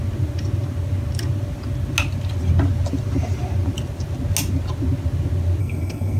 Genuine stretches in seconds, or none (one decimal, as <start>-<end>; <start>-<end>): 0.0-5.6